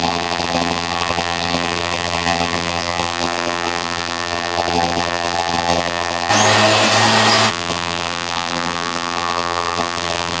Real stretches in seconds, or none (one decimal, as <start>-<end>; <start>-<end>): 6.3-7.5